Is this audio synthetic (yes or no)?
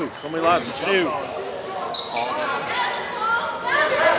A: no